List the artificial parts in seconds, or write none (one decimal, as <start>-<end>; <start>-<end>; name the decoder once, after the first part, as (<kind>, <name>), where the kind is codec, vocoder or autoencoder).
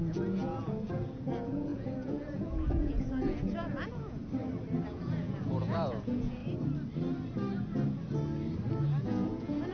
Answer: 0.0-4.2 (vocoder, Vocos); 4.9-6.4; 9.0-9.7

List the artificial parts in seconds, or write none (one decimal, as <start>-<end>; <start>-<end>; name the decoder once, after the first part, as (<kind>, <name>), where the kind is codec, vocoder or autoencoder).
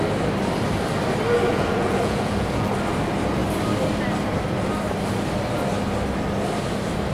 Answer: 1.5-2.7 (vocoder, Vocos)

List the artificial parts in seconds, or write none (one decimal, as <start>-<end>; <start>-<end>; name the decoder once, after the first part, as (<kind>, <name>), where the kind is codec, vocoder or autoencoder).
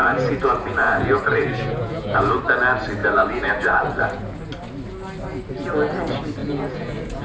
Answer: 0.0-2.4 (vocoder, Vocos); 3.0-4.4; 6.4-7.2